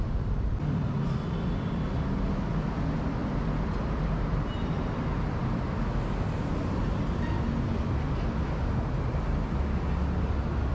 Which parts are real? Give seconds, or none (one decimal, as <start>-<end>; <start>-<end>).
0.0-10.7